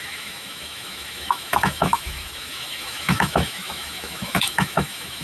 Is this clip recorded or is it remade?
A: remade